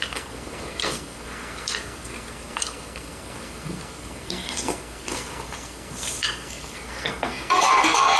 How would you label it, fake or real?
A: fake